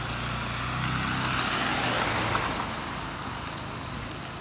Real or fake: real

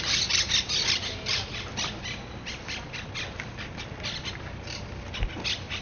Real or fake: real